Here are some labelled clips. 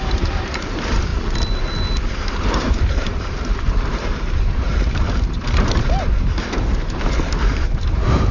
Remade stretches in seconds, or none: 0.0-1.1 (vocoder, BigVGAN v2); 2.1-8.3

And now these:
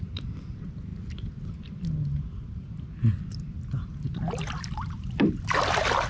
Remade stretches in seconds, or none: 0.0-0.9 (vocoder, BigVGAN v2); 2.2-6.1

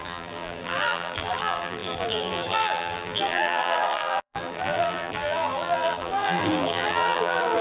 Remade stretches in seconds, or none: 0.0-7.6 (vocoder, BigVGAN v2)